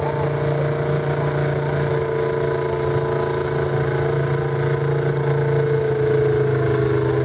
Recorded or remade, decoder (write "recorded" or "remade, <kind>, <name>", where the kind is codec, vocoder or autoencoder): recorded